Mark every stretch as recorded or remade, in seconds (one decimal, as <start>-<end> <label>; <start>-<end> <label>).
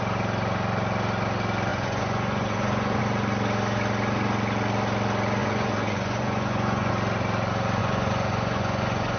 0.0-1.7 recorded; 1.7-3.0 remade; 3.0-5.4 recorded; 5.4-6.9 remade; 6.9-7.8 recorded; 7.8-9.2 remade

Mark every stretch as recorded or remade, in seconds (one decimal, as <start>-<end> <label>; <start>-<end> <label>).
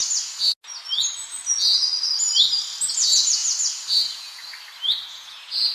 0.0-2.9 recorded; 2.9-3.4 remade; 3.4-4.0 recorded; 4.0-4.4 remade; 4.4-5.1 recorded; 5.1-5.7 remade